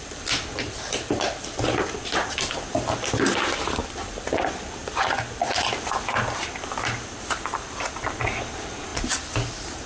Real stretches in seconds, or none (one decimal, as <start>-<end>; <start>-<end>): 8.9-9.5